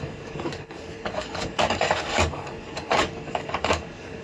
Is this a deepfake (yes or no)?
yes